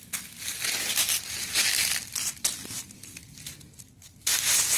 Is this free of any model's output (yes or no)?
yes